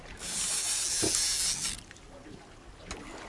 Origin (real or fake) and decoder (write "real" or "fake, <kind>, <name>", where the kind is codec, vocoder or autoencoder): real